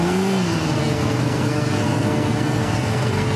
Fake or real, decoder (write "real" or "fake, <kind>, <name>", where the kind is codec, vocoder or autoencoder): fake, codec, SNAC